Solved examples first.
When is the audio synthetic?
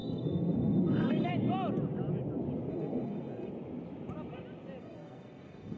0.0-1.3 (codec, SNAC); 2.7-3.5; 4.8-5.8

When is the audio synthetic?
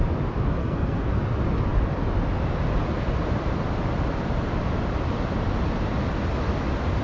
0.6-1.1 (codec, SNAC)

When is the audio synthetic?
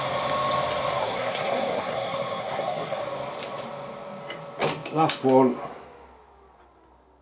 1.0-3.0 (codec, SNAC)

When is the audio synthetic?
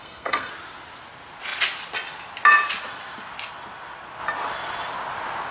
0.0-0.5 (codec, SNAC)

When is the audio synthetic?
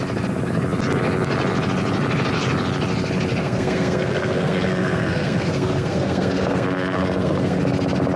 3.4-7.6 (codec, SNAC)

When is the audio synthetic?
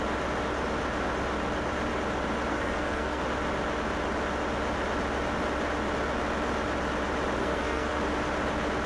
2.5-3.2 (codec, SNAC); 7.4-8.0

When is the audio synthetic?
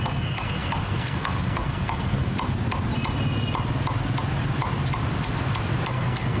0.0-2.3 (codec, SNAC); 5.9-6.4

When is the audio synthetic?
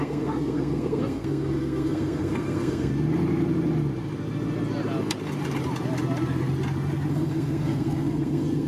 0.0-2.9 (codec, SNAC); 7.1-8.7